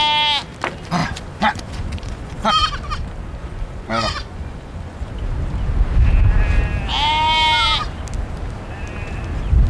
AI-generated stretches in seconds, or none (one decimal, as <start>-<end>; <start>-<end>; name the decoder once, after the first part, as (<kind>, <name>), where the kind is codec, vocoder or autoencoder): 1.0-2.5 (vocoder, Vocos); 3.4-5.1